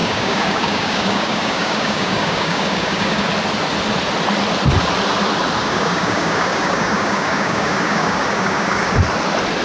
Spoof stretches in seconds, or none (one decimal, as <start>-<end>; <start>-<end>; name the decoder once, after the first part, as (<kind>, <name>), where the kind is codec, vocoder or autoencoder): 0.0-3.3 (codec, DAC); 5.6-8.9